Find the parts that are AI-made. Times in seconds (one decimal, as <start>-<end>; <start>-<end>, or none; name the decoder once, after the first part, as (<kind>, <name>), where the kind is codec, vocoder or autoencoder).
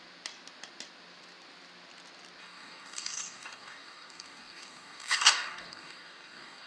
2.4-6.7 (codec, DAC)